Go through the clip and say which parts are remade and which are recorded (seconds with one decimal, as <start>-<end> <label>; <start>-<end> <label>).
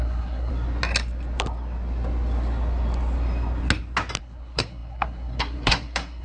0.0-0.5 remade; 0.5-4.2 recorded; 4.2-6.2 remade